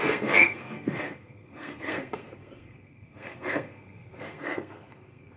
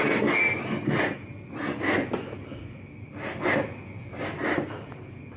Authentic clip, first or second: second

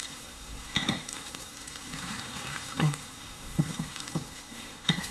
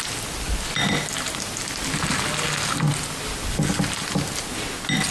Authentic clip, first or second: second